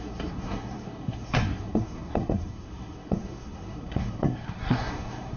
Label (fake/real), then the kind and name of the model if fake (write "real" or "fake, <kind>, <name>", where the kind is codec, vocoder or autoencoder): fake, codec, SNAC